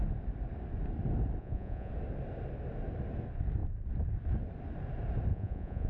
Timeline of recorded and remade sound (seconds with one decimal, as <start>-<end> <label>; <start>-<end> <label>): 0.0-1.4 recorded; 1.4-1.9 remade; 1.9-5.3 recorded; 5.3-5.9 remade